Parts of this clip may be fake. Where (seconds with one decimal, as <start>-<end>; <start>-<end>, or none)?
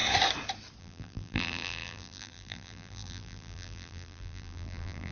0.8-5.1